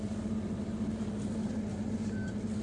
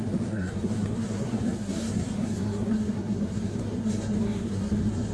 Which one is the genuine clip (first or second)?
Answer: first